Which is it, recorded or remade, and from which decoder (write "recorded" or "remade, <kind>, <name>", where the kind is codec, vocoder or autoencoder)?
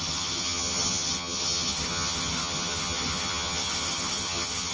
remade, vocoder, HiFi-GAN